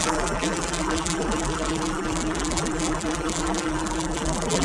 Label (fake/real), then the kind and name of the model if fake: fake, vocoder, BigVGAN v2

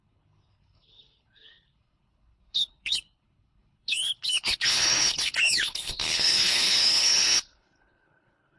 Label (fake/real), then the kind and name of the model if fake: fake, codec, HILCodec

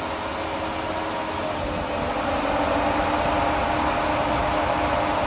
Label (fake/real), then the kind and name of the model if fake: real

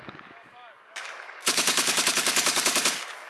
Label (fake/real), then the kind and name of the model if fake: fake, codec, DAC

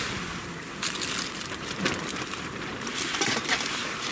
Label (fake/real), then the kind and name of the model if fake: fake, vocoder, BigVGAN v2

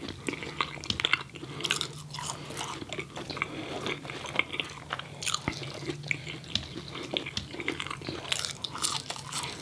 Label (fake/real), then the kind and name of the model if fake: real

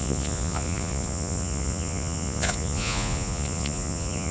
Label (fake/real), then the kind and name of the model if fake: fake, vocoder, Vocos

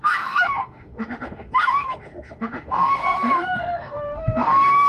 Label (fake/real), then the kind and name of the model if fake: fake, autoencoder, DAC-VAE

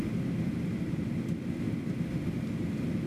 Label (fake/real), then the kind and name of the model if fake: real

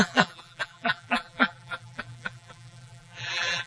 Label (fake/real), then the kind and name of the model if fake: fake, vocoder, BigVGAN v2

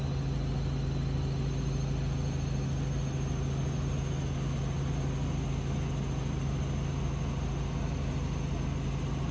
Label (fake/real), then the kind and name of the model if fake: real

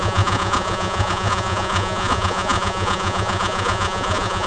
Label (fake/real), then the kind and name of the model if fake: fake, vocoder, Vocos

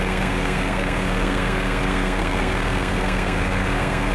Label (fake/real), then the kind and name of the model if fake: fake, codec, SNAC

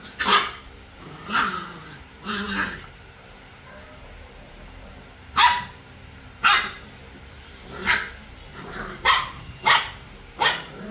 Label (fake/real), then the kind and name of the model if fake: fake, vocoder, BigVGAN v2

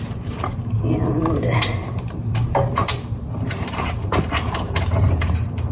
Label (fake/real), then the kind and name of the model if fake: fake, vocoder, BigVGAN v2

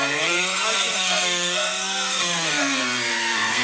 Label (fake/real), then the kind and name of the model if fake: fake, codec, SNAC